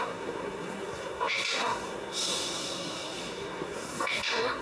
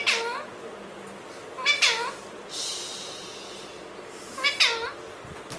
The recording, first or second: second